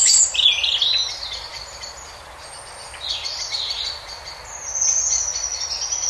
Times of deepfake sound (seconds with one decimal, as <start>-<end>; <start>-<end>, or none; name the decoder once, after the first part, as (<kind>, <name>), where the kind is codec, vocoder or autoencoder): none